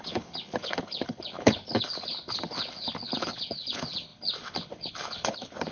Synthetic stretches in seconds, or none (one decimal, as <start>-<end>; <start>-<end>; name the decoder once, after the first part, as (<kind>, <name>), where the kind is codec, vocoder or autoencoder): 0.0-5.7 (codec, HILCodec)